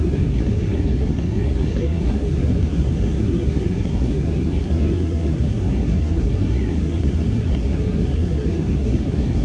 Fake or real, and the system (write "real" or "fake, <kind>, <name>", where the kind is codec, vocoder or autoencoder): fake, codec, SNAC